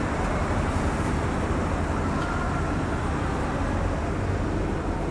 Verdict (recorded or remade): recorded